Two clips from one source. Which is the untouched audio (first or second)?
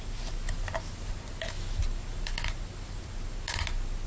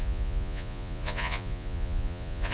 first